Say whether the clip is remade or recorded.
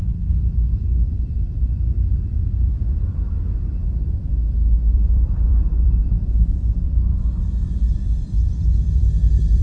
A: remade